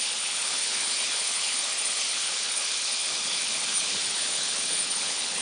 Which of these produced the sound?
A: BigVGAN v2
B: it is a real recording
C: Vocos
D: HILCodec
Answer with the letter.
D